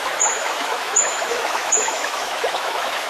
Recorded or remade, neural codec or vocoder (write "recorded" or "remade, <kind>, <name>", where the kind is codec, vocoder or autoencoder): remade, autoencoder, DAC-VAE